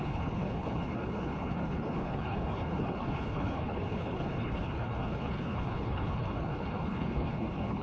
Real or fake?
fake